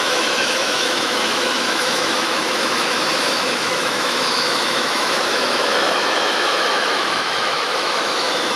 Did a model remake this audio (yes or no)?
yes